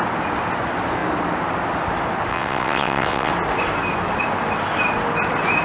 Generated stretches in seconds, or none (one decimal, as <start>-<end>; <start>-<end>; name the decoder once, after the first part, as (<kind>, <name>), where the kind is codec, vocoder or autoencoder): 2.3-3.3 (vocoder, WaveNeXt)

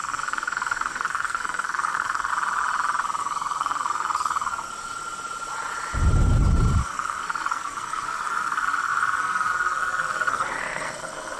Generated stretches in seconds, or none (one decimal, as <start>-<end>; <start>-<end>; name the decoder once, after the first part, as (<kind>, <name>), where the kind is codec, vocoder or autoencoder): 0.0-2.3 (codec, SNAC); 3.2-4.7; 6.8-11.4